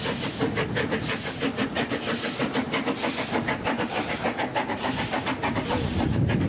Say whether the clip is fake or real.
real